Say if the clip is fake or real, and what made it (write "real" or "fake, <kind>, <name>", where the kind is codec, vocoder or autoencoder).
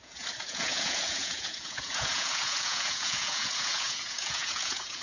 fake, vocoder, Vocos